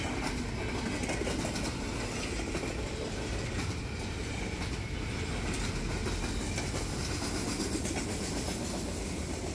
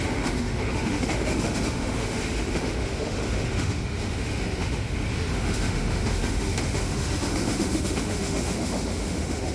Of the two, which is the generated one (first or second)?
second